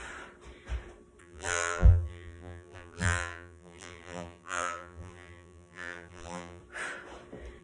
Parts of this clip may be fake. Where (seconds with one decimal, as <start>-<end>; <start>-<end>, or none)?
1.2-6.6